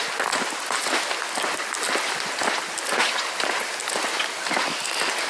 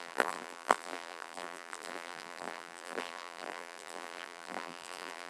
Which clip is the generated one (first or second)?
second